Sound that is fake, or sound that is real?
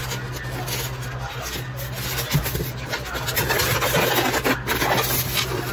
real